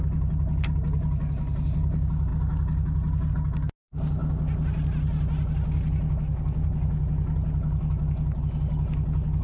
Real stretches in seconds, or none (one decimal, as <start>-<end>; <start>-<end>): 0.0-9.4